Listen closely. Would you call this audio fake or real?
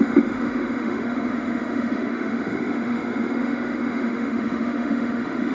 fake